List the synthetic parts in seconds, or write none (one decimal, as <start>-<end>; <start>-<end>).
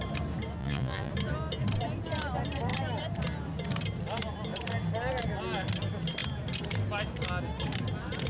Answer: 0.6-1.1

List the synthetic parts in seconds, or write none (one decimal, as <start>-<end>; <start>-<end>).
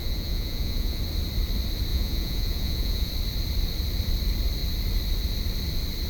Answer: 0.0-1.0; 1.9-3.1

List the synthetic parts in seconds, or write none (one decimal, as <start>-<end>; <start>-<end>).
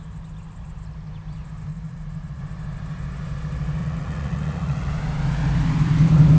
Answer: 1.7-2.4; 3.8-4.9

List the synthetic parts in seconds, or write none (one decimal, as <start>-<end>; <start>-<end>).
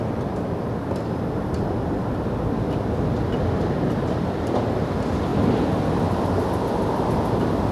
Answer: none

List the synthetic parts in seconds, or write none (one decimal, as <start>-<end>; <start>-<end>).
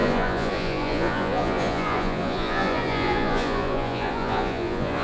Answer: 0.0-5.0